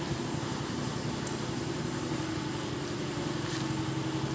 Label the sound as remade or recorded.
recorded